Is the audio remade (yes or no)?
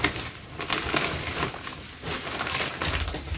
no